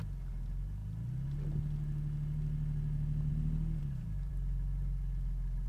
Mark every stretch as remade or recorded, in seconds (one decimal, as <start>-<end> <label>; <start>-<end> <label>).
0.0-5.7 recorded